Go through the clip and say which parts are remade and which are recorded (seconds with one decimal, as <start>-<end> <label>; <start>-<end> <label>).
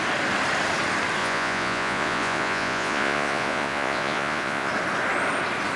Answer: 0.0-1.2 recorded; 1.2-4.7 remade; 4.7-5.8 recorded